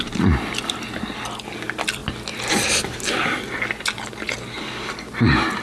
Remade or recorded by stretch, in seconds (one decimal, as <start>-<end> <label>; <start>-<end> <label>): 0.0-5.6 recorded